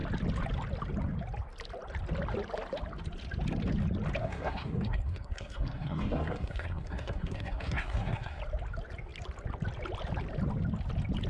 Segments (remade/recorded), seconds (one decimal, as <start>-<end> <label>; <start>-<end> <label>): 0.0-4.2 recorded; 4.2-8.4 remade; 8.4-11.3 recorded